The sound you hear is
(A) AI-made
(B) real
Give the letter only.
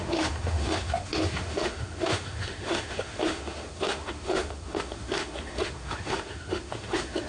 A